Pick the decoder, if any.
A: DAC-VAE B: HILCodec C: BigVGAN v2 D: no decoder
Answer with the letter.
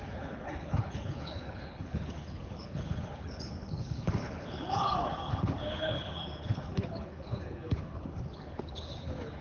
B